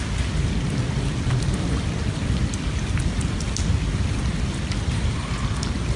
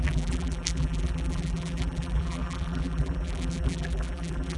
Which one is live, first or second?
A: first